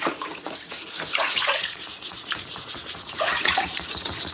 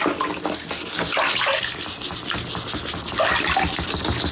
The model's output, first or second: first